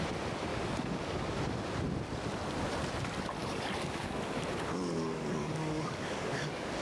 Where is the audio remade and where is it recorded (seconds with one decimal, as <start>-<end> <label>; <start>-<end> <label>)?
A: 0.0-0.5 recorded; 0.5-1.3 remade; 1.3-3.4 recorded; 3.4-6.8 remade